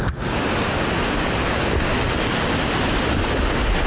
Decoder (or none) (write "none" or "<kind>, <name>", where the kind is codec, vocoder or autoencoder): none